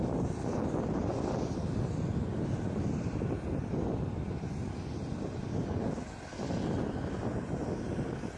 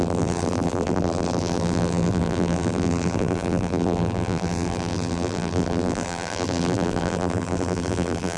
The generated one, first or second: second